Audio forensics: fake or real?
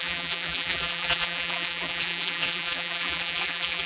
fake